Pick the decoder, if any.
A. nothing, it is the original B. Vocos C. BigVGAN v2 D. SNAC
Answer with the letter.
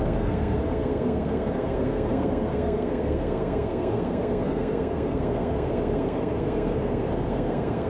D